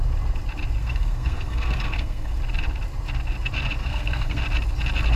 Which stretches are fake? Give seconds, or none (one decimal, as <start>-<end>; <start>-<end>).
0.8-2.4; 3.8-4.4